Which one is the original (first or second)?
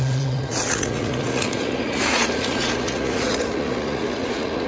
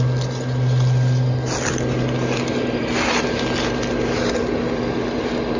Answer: second